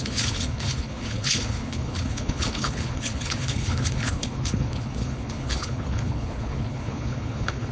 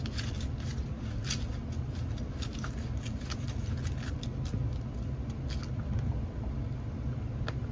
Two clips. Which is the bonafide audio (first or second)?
second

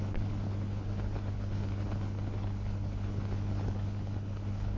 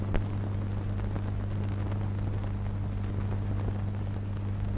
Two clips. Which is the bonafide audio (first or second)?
second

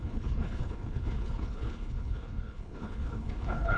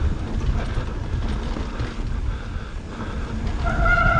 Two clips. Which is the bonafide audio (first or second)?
second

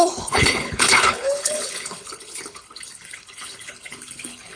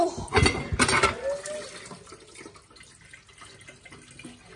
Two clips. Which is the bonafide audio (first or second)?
second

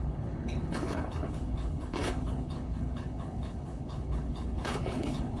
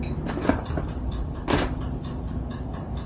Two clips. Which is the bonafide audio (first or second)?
second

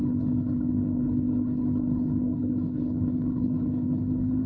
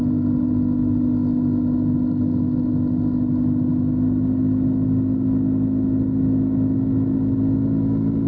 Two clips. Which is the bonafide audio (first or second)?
second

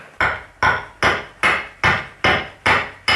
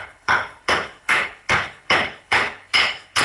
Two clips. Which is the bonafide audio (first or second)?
first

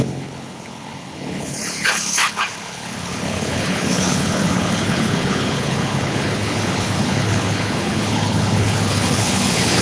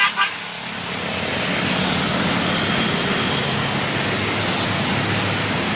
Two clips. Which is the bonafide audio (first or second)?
second